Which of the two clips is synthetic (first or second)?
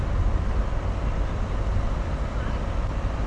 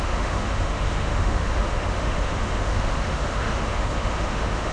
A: second